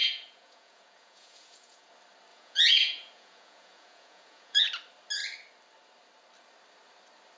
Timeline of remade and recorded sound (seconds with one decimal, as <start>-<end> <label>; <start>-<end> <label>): 0.0-1.9 remade; 1.9-2.3 recorded; 2.3-4.6 remade; 4.6-7.4 recorded